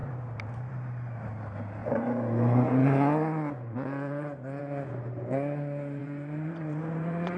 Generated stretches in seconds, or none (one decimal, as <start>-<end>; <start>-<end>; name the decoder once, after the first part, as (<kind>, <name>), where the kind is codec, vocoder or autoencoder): 1.8-4.6 (vocoder, Vocos); 6.0-7.4